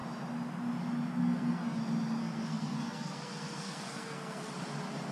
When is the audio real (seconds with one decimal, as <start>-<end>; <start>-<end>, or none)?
0.0-1.2; 1.8-2.2; 4.5-5.1